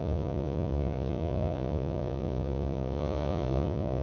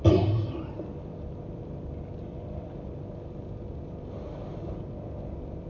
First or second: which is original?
second